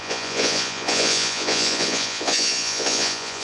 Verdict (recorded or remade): remade